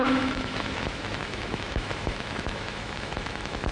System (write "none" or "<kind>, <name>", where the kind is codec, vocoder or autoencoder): autoencoder, DAC-VAE